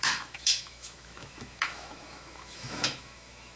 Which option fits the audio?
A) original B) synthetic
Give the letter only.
B